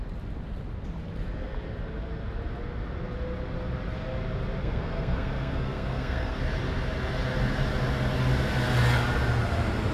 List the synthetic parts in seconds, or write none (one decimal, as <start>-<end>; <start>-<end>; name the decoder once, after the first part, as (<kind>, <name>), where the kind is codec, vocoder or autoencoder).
4.6-6.4 (codec, SNAC)